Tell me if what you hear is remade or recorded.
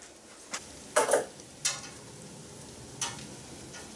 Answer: recorded